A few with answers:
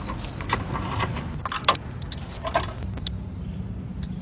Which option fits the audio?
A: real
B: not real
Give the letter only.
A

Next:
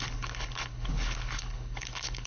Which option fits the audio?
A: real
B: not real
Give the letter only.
B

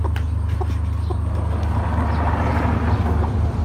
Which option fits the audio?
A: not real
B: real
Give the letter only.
B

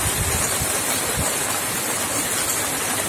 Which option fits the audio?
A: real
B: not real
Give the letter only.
A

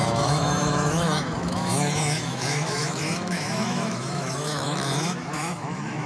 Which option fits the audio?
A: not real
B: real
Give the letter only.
A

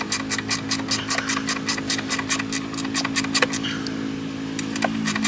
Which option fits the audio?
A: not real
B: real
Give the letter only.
B